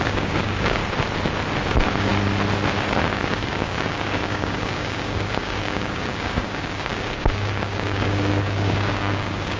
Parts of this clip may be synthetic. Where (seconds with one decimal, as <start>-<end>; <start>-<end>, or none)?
0.0-0.8; 1.7-2.1; 3.0-9.6